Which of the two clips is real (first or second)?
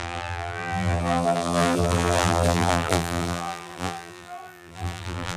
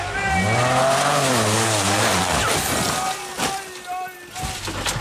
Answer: second